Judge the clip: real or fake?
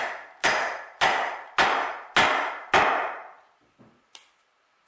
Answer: real